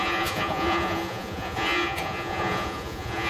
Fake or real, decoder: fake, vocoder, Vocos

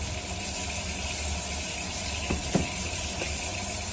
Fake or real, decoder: real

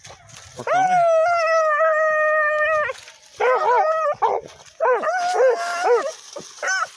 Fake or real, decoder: real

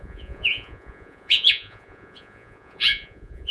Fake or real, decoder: fake, vocoder, Vocos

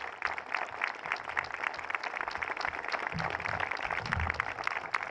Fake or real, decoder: real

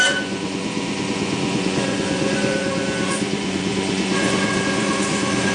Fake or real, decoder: fake, vocoder, Vocos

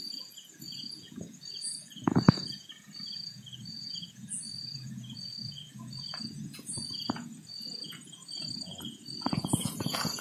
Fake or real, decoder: fake, vocoder, Vocos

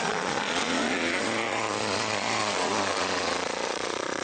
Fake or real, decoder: fake, vocoder, Vocos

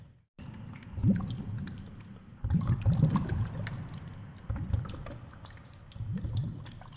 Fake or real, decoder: real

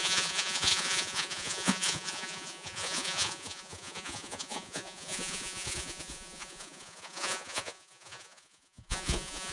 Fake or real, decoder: fake, vocoder, Vocos